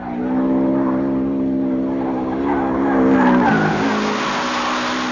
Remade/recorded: recorded